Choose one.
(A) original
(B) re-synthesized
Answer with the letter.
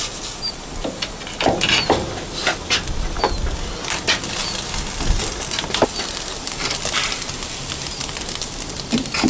A